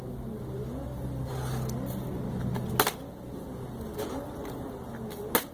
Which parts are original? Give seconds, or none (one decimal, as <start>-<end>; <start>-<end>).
0.0-5.5